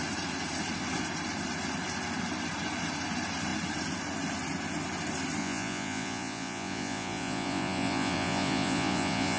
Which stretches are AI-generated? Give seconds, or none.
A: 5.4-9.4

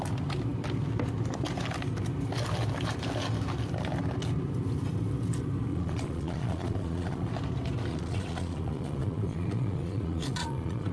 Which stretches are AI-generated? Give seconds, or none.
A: 5.7-7.3; 7.9-10.9

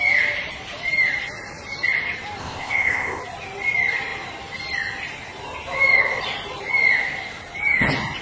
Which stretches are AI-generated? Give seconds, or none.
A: 2.4-3.2

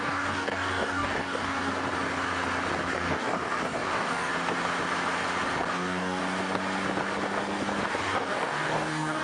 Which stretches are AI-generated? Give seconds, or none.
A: 0.0-1.7; 2.9-4.3; 5.7-6.2; 8.0-9.2

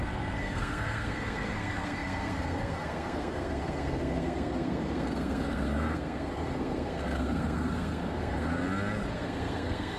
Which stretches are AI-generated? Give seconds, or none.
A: 0.0-8.6; 9.1-10.0

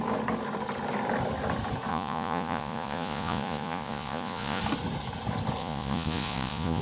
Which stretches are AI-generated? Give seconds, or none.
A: 1.9-4.6; 5.6-6.8

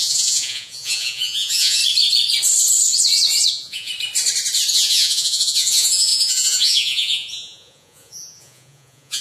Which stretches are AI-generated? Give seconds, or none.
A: 0.0-1.8; 3.5-3.9; 4.7-9.2

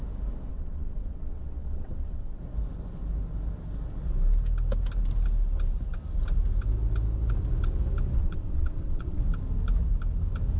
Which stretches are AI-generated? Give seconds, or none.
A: 0.5-2.4; 8.2-9.2